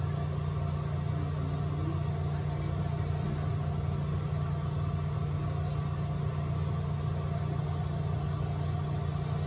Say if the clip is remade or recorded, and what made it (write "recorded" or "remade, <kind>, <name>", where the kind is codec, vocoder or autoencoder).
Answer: recorded